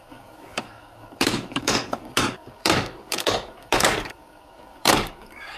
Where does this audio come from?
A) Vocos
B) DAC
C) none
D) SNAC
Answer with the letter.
B